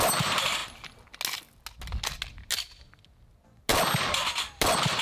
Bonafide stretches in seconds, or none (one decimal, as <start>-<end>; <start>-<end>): 0.0-5.0